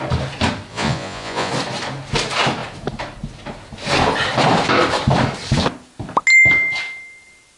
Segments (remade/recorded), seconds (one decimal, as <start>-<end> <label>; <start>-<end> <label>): 0.0-0.7 recorded; 0.7-1.5 remade; 1.5-7.6 recorded